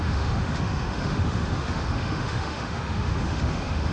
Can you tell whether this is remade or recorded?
remade